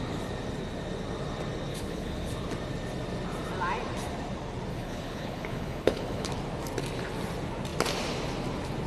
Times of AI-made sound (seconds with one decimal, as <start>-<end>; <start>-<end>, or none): 1.7-2.3; 4.7-6.3